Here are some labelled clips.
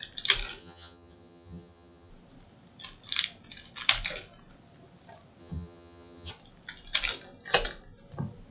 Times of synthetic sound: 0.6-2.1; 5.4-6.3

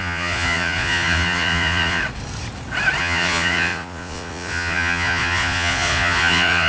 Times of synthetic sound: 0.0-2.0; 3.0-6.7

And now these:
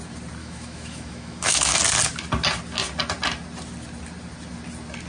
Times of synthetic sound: 0.4-1.7